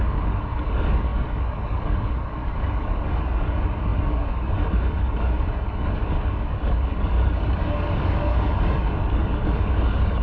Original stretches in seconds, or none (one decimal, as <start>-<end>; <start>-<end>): none